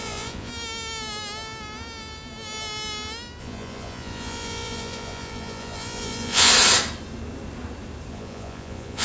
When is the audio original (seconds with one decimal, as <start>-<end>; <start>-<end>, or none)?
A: 0.5-3.4; 6.5-8.1

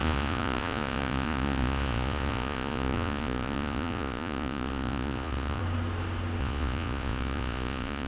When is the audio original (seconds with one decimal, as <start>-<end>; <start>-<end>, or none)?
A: 5.6-6.4